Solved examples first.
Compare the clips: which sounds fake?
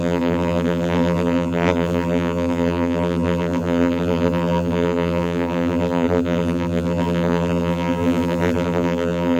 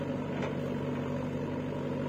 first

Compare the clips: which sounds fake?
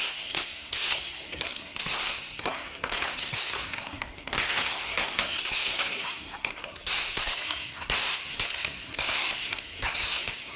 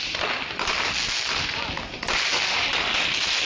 first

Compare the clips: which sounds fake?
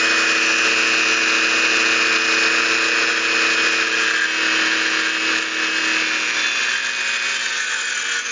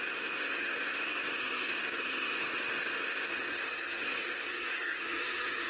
second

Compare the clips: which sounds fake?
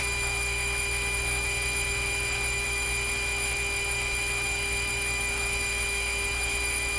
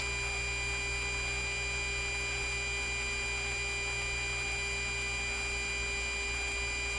first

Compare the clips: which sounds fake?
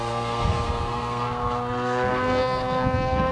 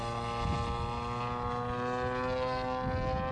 first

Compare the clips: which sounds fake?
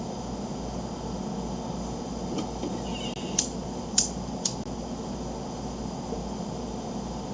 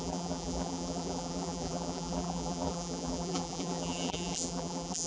second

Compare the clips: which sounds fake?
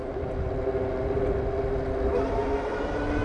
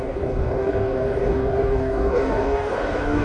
second